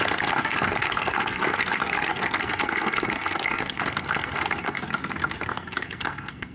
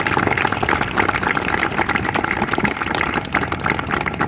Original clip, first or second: second